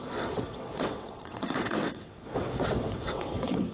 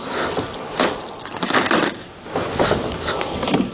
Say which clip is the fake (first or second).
first